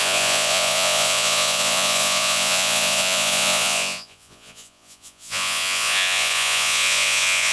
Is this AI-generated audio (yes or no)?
yes